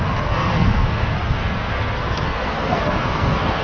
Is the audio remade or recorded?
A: remade